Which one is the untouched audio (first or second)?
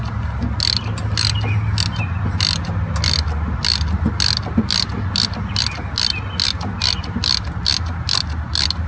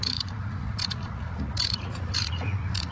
first